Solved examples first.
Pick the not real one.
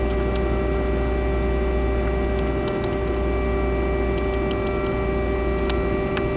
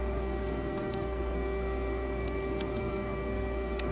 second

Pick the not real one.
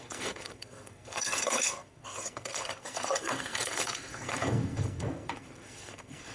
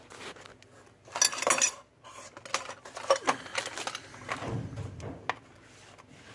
first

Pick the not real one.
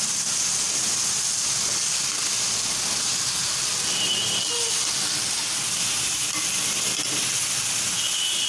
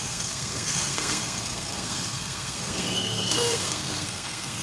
second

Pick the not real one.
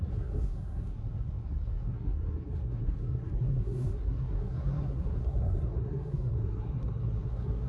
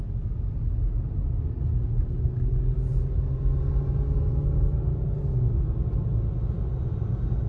first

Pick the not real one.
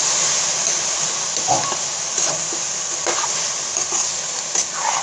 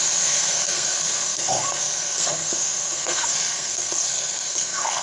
second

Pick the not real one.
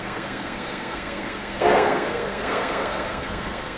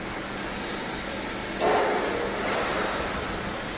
first